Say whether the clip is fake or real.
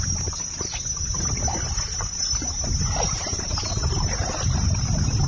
fake